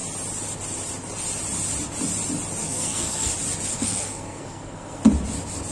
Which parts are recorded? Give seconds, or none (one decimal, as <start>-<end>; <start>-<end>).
0.0-2.6; 3.3-3.7; 5.0-5.7